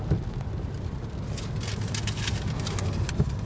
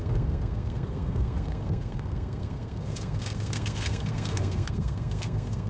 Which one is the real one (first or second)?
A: first